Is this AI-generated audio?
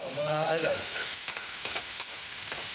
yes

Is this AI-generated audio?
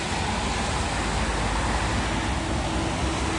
no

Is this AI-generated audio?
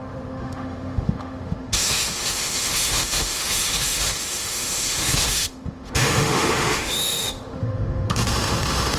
yes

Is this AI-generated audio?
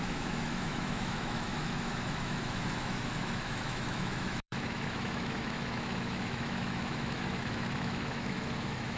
yes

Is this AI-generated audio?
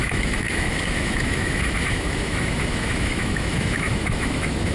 yes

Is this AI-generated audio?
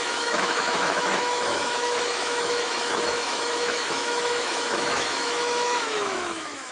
yes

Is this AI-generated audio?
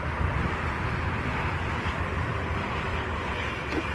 no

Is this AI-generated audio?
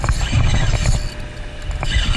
no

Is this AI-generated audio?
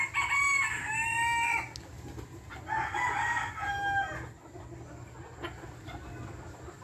no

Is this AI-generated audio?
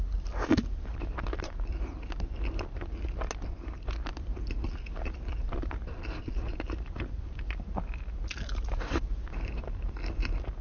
no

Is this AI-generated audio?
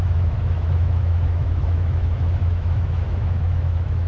yes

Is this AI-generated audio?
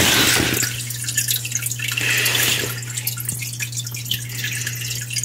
no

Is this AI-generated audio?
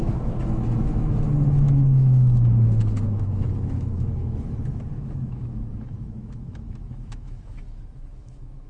yes